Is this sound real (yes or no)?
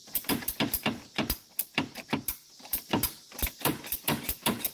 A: no